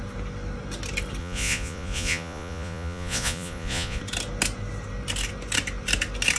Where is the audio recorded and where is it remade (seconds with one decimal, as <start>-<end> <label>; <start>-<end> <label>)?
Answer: 0.0-1.2 recorded; 1.2-4.0 remade; 4.0-6.4 recorded